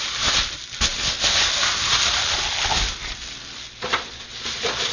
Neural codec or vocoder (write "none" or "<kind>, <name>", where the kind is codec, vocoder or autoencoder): none